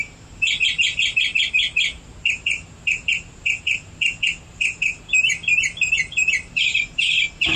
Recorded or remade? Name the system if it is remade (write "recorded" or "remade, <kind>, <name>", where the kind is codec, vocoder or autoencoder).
remade, vocoder, BigVGAN v2